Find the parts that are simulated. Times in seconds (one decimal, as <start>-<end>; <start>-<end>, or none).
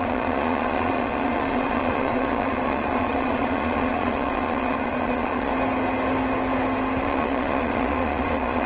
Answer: 0.0-5.5; 7.0-8.7